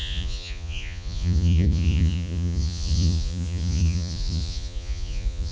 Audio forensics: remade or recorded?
remade